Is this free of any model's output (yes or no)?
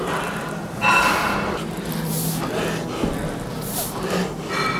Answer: yes